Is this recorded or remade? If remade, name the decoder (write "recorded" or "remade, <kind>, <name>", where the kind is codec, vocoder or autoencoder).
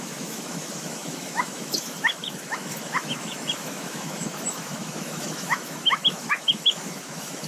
remade, autoencoder, DAC-VAE